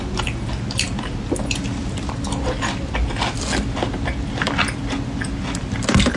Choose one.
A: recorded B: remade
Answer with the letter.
A